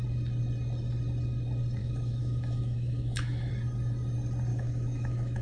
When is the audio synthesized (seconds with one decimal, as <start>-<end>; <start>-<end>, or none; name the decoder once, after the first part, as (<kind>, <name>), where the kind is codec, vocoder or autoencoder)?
1.8-3.5 (autoencoder, DAC-VAE); 4.5-5.4